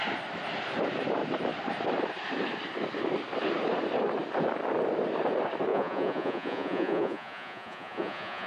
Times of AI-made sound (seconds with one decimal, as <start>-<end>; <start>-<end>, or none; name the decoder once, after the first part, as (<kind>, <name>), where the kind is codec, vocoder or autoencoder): 5.7-8.5 (vocoder, Vocos)